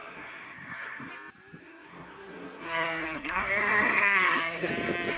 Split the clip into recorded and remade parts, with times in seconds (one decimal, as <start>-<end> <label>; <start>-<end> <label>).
0.0-1.1 remade; 1.1-1.6 recorded; 1.6-4.7 remade; 4.7-5.2 recorded